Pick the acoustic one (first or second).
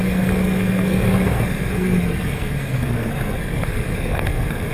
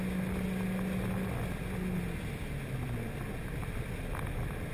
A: second